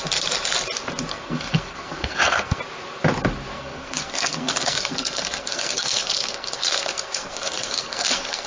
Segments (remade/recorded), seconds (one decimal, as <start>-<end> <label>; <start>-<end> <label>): 0.0-1.1 recorded; 1.1-2.6 remade; 2.6-3.5 recorded; 3.5-8.5 remade